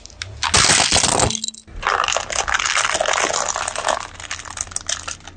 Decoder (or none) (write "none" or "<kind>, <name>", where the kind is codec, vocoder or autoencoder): none